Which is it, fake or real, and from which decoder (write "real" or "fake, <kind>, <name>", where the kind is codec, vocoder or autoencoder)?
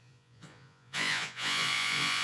fake, vocoder, Vocos